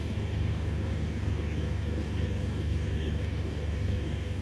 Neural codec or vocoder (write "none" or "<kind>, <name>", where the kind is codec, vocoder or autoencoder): codec, DAC